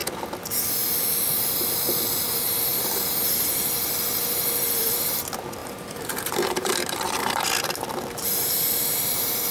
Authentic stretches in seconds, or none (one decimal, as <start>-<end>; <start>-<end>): 0.0-5.6; 7.5-9.5